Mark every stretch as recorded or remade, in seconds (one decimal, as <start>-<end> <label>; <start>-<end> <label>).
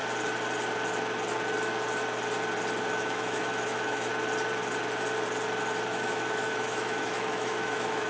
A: 0.0-2.8 recorded; 2.8-4.1 remade; 4.1-5.9 recorded; 5.9-8.1 remade